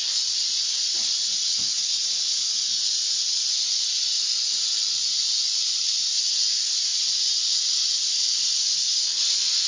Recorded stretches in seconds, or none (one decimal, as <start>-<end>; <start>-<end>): 0.0-9.1